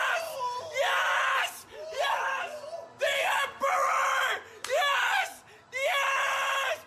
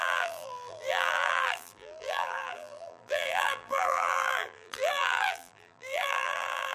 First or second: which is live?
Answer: first